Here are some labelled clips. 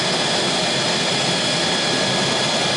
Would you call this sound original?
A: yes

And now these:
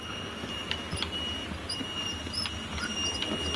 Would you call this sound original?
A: yes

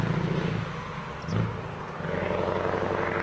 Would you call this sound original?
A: yes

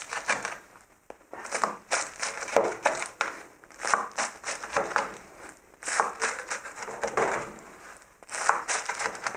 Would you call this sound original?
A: no